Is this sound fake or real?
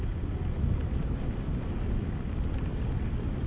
real